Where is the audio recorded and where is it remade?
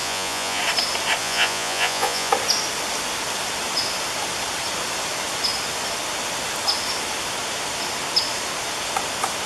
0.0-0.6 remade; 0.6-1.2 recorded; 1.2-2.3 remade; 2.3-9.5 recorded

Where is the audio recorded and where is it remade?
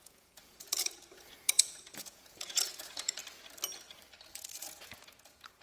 0.0-3.2 remade; 3.2-4.3 recorded; 4.3-5.6 remade